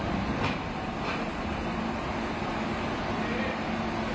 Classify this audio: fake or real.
real